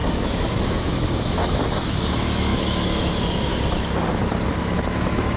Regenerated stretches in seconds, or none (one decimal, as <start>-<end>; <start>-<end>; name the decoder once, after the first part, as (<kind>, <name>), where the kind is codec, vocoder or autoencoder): 0.0-3.5 (autoencoder, DAC-VAE); 4.6-5.4

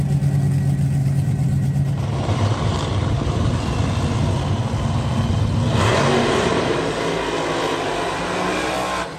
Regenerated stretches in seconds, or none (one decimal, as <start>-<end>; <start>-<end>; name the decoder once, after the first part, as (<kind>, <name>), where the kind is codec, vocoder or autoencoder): 1.0-3.6 (vocoder, BigVGAN v2); 5.9-6.9

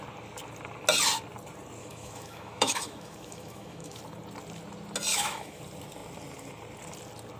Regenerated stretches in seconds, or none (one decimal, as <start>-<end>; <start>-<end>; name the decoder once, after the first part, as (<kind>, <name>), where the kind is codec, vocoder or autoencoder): 1.8-4.0 (autoencoder, DAC-VAE); 5.1-5.6

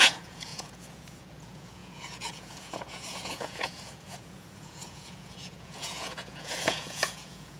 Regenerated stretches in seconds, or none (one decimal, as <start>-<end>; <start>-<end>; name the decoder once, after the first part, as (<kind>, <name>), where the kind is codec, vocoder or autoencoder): 0.0-7.6 (vocoder, Vocos)